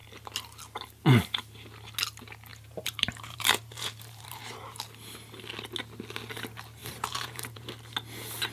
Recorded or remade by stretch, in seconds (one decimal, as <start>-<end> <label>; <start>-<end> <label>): 0.0-2.5 recorded; 2.5-4.8 remade; 4.8-6.8 recorded; 6.8-7.7 remade; 7.7-8.5 recorded